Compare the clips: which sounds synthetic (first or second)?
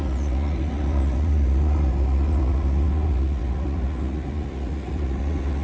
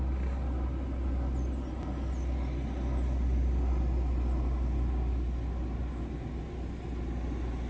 first